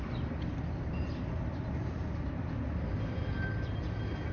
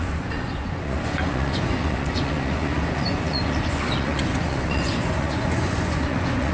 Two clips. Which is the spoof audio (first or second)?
second